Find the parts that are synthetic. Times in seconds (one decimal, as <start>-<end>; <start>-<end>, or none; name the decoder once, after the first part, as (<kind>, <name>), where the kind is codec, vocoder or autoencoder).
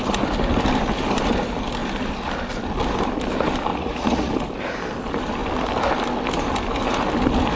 3.7-4.3 (vocoder, Vocos)